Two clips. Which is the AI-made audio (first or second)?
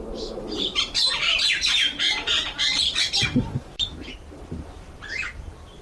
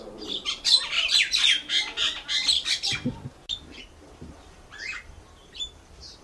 first